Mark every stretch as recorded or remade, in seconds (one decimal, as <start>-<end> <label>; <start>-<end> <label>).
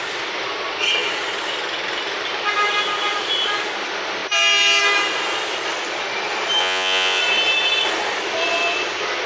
0.0-6.6 recorded; 6.6-7.2 remade; 7.2-9.3 recorded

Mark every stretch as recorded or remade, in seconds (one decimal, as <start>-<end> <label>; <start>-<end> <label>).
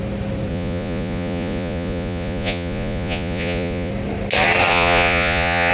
0.0-0.5 recorded; 0.5-3.9 remade; 3.9-4.7 recorded; 4.7-5.7 remade